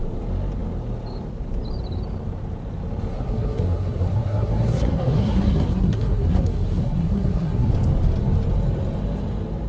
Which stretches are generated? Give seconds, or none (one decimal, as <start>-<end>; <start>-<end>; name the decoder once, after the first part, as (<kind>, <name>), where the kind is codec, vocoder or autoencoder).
3.1-7.7 (codec, SNAC)